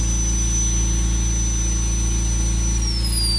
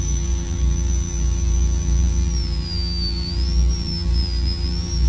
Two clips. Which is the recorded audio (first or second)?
first